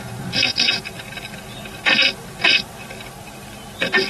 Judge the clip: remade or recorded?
recorded